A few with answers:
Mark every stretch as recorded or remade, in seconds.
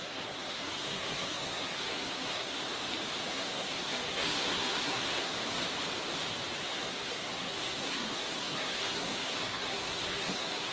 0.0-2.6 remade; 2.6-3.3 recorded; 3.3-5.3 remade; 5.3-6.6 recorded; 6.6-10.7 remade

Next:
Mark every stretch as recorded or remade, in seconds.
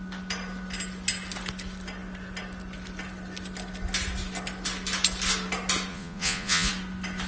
0.0-5.9 recorded; 5.9-6.7 remade; 6.7-7.3 recorded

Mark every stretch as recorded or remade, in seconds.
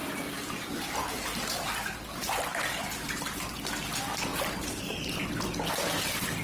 0.0-1.8 remade; 1.8-4.3 recorded; 4.3-5.2 remade; 5.2-6.4 recorded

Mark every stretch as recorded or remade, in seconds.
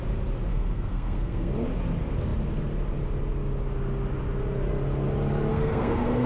0.0-0.5 recorded; 0.5-1.5 remade; 1.5-5.5 recorded; 5.5-6.3 remade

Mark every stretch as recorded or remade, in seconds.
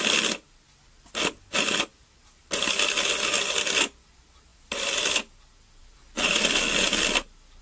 0.0-4.5 recorded; 4.5-5.1 remade; 5.1-5.8 recorded; 5.8-6.8 remade; 6.8-7.6 recorded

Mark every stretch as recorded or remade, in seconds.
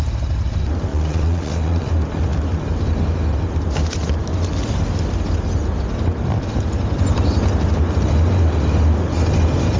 0.0-0.9 recorded; 0.9-1.9 remade; 1.9-9.8 recorded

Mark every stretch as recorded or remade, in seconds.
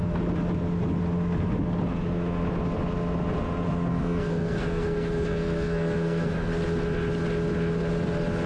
0.0-3.9 recorded; 3.9-6.5 remade; 6.5-8.5 recorded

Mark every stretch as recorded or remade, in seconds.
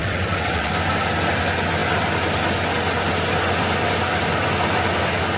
0.0-0.7 remade; 0.7-5.4 recorded